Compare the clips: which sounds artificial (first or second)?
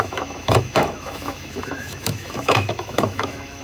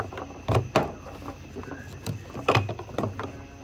first